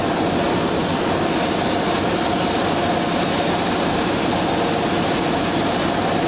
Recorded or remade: recorded